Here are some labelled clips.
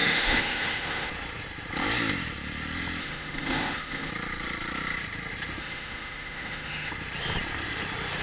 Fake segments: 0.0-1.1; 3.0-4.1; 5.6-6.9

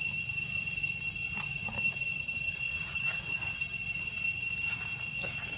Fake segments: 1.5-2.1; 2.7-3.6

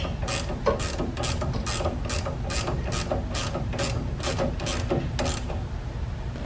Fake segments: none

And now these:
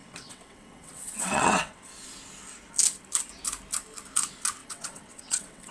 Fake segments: 0.0-1.9; 4.6-5.7